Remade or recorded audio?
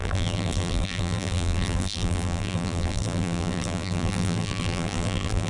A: remade